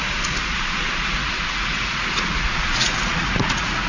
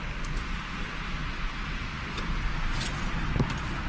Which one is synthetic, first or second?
first